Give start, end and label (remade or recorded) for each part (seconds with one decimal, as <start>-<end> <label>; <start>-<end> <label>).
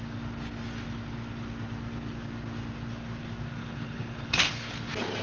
0.0-3.6 recorded; 3.6-4.8 remade; 4.8-5.2 recorded